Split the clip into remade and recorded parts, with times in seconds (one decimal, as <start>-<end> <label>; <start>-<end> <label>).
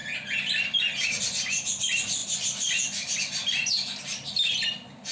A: 0.0-5.1 recorded